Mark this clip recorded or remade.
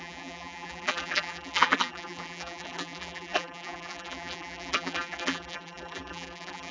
remade